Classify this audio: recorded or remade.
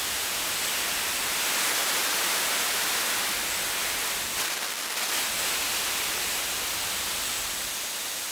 recorded